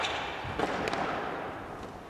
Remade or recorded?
recorded